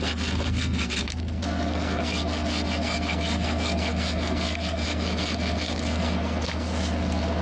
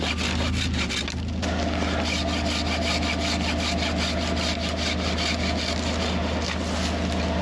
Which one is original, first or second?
second